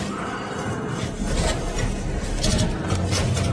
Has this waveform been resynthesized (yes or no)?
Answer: no